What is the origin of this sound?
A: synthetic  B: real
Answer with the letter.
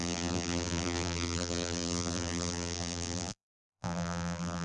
A